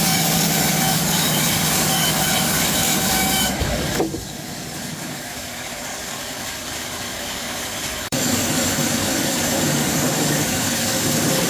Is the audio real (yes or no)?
no